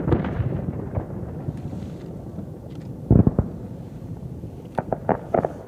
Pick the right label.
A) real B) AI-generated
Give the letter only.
B